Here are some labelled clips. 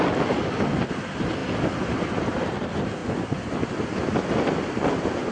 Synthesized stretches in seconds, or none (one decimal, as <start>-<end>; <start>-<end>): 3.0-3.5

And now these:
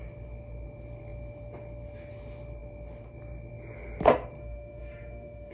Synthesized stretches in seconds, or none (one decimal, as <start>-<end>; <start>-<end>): 4.4-5.5

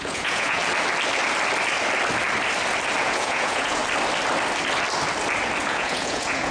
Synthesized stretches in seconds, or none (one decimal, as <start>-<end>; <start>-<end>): 0.0-0.6; 3.0-3.8; 5.7-6.5